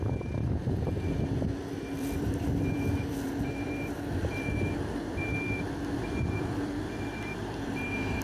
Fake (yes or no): yes